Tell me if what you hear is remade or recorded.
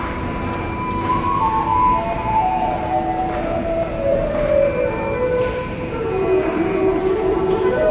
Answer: remade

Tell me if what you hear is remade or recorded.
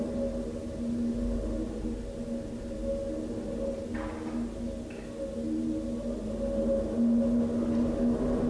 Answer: recorded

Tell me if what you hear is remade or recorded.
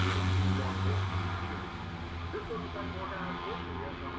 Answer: recorded